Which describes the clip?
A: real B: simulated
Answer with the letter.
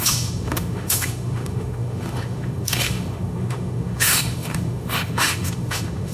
B